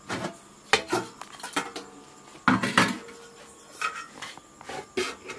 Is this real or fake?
real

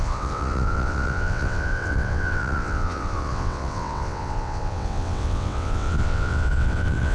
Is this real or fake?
fake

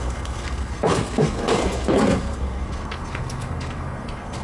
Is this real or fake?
fake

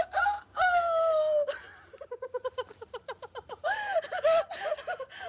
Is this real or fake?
fake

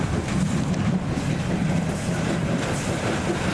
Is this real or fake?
real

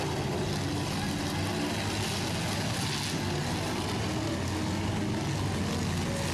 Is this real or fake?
real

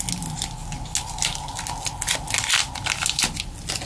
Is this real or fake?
real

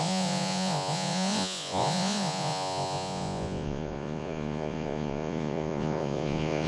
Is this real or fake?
fake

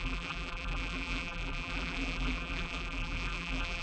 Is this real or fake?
fake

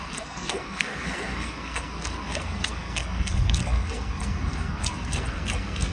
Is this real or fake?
fake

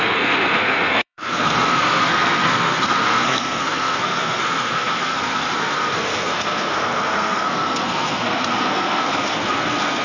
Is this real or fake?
fake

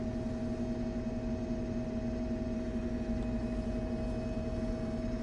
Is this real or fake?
real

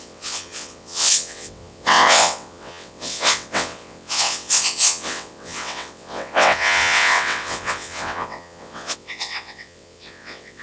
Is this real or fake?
fake